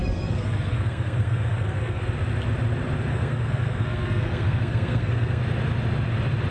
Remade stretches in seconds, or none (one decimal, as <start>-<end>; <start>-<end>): 0.0-2.0; 3.1-5.4

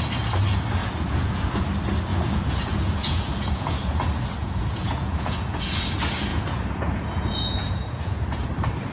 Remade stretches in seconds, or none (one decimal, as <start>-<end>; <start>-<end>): 0.8-1.6; 2.1-4.0; 4.4-5.8; 6.3-8.5